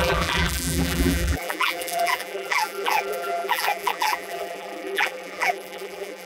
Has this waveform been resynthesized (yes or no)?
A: yes